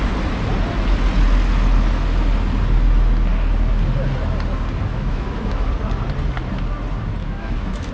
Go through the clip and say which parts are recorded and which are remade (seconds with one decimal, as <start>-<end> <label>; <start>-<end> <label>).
0.0-4.9 recorded; 4.9-5.7 remade; 5.7-7.2 recorded; 7.2-7.9 remade